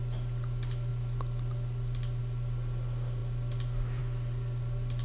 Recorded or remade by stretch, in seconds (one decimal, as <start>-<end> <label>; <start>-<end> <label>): 0.0-5.0 recorded